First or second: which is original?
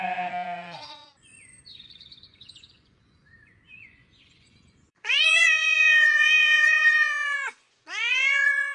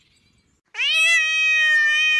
second